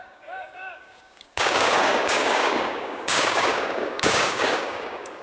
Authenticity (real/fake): fake